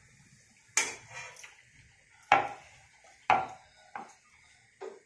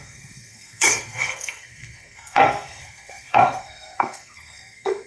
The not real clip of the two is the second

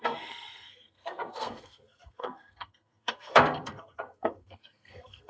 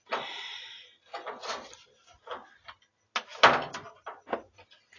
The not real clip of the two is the first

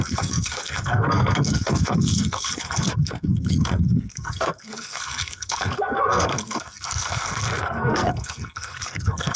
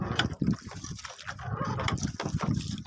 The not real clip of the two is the first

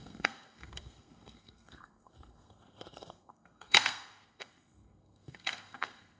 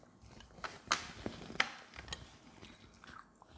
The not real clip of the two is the first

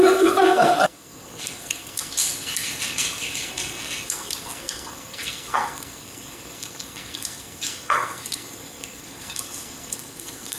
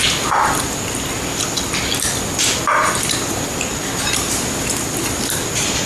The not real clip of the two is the first